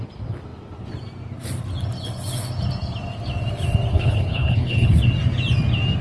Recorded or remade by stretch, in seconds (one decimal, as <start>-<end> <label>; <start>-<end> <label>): 0.0-3.9 recorded; 3.9-4.9 remade; 4.9-6.0 recorded